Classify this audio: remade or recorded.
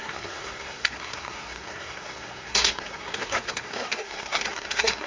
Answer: remade